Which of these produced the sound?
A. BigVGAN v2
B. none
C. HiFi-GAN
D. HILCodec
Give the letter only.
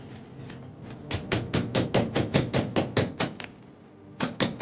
B